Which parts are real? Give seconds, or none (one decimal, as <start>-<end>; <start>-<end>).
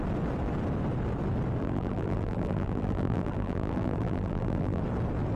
0.0-1.6; 4.8-5.4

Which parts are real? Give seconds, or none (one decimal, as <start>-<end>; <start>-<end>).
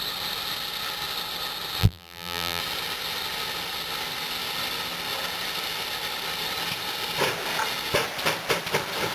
0.0-1.8; 2.6-9.1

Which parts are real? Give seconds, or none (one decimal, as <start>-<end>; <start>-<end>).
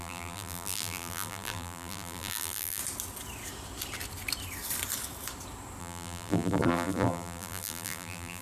2.8-5.8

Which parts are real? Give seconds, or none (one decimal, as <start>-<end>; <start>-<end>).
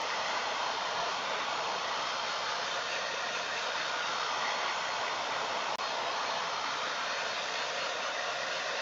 1.3-8.8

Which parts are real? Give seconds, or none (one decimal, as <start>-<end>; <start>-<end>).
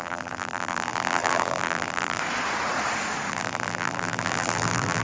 2.2-3.3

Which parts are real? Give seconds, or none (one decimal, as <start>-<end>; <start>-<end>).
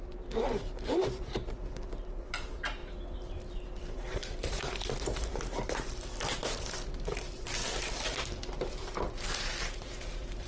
2.8-3.8; 7.6-8.6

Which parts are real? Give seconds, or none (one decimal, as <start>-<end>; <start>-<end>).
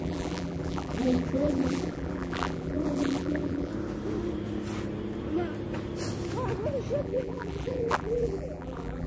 3.7-7.0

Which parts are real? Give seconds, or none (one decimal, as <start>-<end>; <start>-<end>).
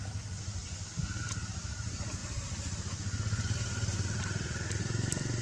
0.0-5.4